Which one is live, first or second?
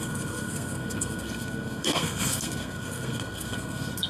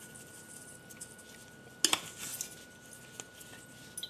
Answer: second